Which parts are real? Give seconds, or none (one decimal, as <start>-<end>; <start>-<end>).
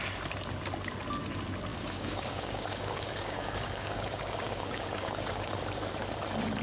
0.0-1.7; 5.6-6.6